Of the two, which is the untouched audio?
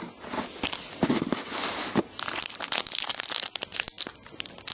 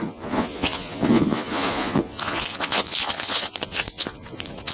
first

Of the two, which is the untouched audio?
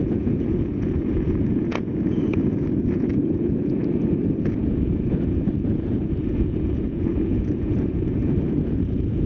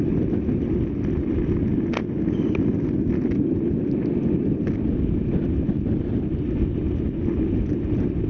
second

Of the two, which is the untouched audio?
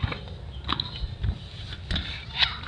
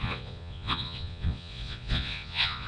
first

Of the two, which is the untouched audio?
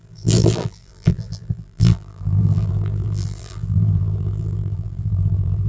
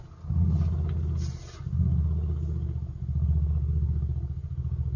second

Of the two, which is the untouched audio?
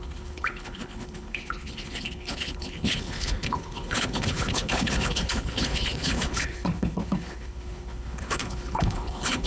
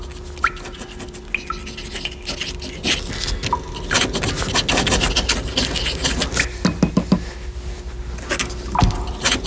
second